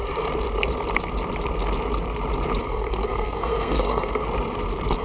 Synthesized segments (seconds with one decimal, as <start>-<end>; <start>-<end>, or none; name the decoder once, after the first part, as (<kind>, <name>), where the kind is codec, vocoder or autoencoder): 2.6-4.2 (codec, SNAC)